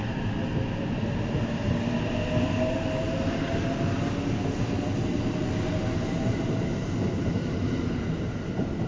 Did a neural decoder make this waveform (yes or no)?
no